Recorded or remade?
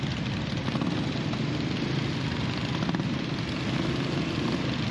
recorded